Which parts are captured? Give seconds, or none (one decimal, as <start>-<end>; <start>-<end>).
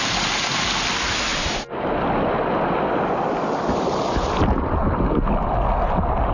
0.0-6.3